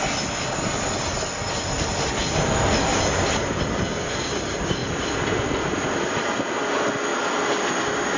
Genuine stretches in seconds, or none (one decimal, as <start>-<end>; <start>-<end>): 0.0-2.9; 3.8-4.8; 5.4-8.2